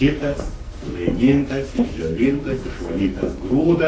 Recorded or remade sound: remade